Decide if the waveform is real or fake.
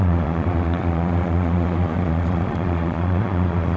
fake